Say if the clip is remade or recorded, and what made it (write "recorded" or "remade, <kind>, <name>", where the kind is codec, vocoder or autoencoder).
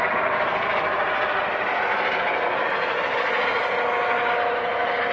recorded